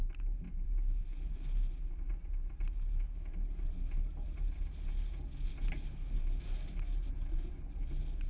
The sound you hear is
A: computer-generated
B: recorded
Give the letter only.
B